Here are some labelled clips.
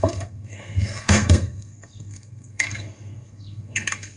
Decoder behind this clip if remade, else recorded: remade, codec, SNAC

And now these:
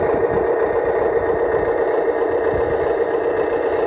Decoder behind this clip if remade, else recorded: recorded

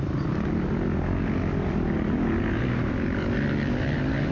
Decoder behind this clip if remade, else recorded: recorded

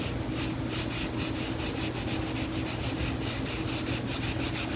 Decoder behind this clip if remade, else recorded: recorded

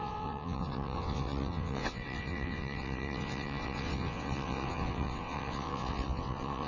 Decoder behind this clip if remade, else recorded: remade, vocoder, WaveNeXt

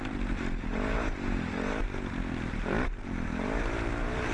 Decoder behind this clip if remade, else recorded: recorded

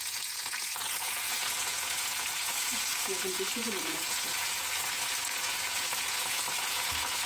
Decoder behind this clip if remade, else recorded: remade, vocoder, Vocos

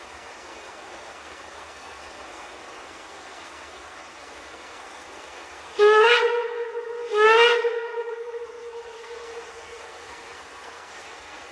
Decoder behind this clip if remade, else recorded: remade, codec, SNAC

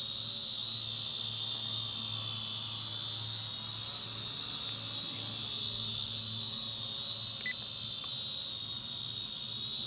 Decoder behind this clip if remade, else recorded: recorded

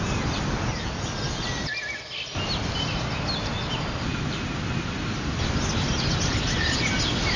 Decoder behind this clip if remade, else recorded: recorded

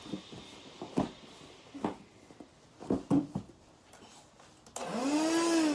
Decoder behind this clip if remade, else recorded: recorded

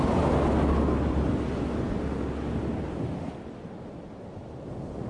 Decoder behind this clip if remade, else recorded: recorded